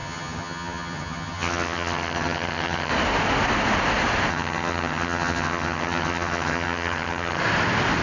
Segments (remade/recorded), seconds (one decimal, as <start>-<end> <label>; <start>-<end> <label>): 0.0-2.9 remade; 2.9-4.3 recorded; 4.3-7.4 remade; 7.4-8.0 recorded